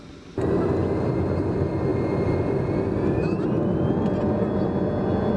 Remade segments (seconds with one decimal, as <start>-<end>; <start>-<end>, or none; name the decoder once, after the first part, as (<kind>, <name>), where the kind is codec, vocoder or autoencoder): none

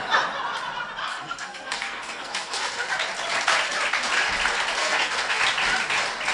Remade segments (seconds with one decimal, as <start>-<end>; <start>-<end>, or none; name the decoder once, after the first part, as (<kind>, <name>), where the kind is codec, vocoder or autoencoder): 1.0-2.9 (codec, SNAC); 4.8-5.4

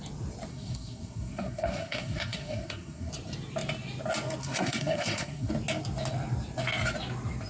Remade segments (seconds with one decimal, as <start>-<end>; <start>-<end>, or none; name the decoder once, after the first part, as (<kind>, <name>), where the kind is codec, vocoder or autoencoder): 0.5-3.1 (codec, SNAC); 4.4-5.5

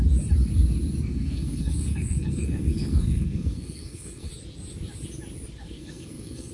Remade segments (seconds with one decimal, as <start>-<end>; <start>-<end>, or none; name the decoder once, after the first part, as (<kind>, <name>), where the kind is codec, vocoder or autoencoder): 1.1-4.3 (codec, SNAC); 5.6-6.5